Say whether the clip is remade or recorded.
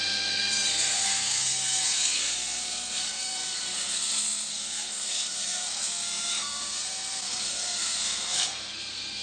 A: remade